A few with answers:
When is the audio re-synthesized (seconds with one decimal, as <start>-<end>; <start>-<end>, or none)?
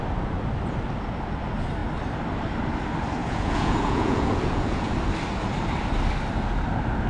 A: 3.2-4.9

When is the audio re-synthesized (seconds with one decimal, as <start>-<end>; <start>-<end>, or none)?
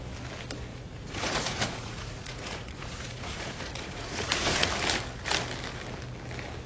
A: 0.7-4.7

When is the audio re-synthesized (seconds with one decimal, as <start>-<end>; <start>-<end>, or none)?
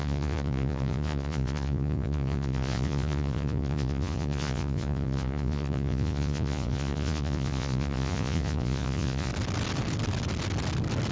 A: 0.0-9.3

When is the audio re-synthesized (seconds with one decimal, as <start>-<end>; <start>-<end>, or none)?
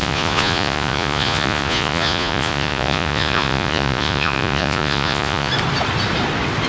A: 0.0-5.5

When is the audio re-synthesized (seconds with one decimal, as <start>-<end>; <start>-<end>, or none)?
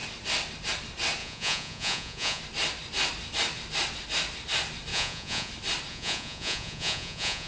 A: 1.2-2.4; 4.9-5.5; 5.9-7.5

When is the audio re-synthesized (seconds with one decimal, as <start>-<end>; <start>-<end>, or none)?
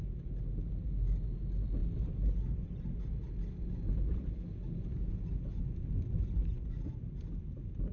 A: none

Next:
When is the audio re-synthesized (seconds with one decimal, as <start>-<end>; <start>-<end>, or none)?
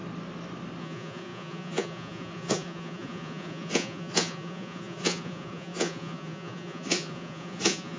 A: 0.8-8.0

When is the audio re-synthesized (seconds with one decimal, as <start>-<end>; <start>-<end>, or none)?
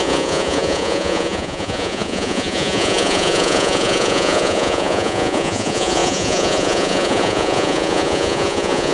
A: 0.0-8.9